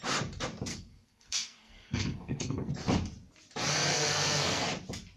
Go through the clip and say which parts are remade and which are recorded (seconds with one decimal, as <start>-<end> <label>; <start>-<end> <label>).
0.0-0.7 recorded; 0.7-2.7 remade; 2.7-3.9 recorded; 3.9-4.7 remade; 4.7-5.2 recorded